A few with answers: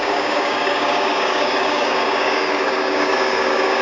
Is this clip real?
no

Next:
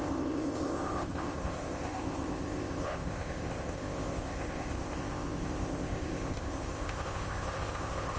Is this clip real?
no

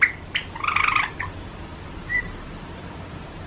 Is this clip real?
no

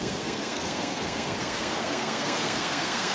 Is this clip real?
no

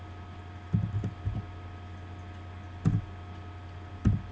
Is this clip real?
yes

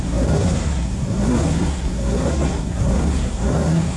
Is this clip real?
no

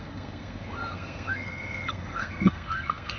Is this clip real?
no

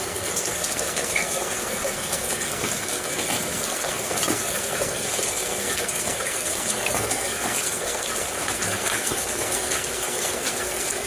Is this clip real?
no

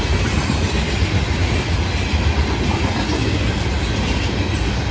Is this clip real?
yes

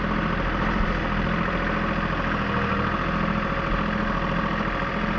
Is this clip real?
yes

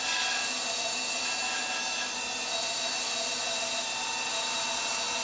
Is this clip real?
yes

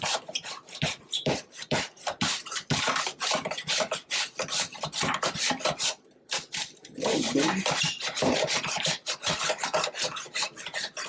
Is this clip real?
no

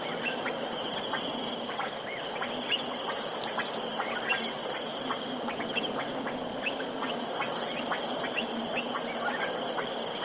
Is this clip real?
yes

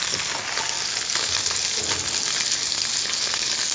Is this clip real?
yes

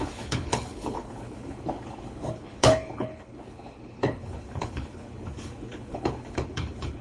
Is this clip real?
no